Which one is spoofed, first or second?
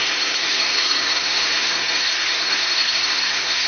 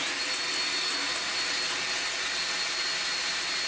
first